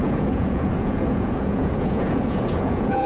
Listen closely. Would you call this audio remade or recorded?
remade